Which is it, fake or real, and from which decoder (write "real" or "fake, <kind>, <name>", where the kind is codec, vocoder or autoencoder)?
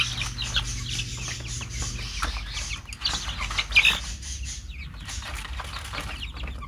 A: real